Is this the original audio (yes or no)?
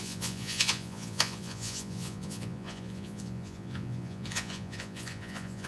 no